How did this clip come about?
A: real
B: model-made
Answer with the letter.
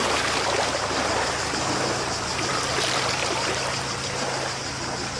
A